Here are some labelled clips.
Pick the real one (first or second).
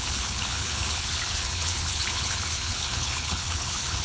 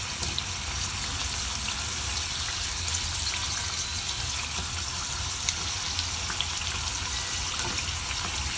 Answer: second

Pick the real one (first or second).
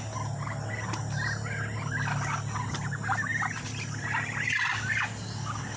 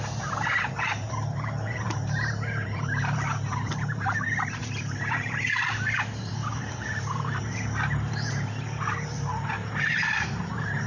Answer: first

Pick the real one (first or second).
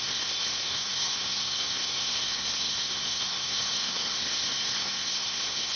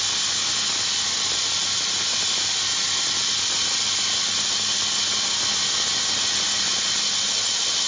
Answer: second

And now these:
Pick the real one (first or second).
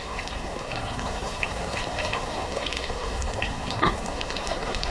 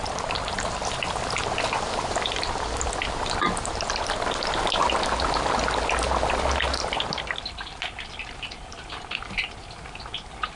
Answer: second